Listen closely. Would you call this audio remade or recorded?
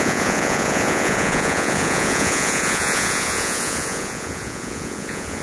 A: remade